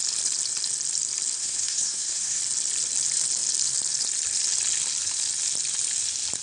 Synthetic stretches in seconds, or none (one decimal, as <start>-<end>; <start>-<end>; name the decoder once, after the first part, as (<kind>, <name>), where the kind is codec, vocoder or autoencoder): 1.4-2.4 (codec, SNAC)